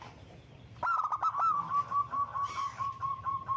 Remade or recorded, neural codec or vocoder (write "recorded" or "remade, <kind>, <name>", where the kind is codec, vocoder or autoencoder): recorded